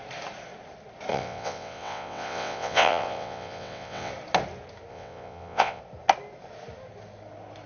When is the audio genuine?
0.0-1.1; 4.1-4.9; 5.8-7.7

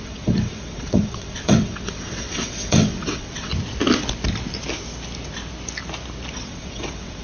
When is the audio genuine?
3.5-6.3

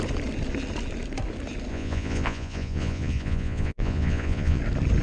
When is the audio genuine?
0.0-1.7; 4.6-5.0

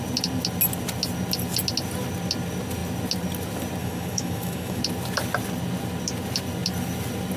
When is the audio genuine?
0.0-3.8; 4.8-7.4

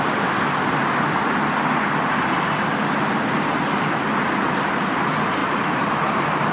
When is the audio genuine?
0.0-5.4

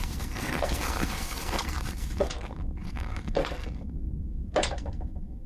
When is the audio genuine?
none